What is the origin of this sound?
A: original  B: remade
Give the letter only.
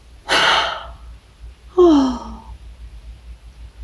A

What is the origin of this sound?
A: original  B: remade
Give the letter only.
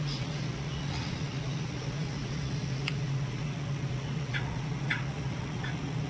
B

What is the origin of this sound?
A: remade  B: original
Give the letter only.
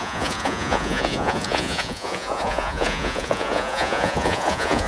A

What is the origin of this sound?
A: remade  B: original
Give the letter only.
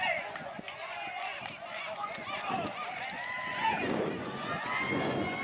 A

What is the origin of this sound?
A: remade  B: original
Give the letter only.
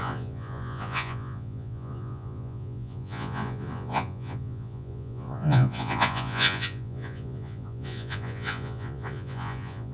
A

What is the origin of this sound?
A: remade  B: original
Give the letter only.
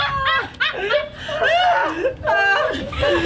B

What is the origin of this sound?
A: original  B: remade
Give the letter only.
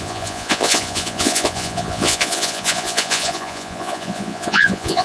B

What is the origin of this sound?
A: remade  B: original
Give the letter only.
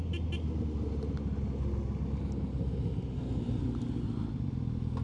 B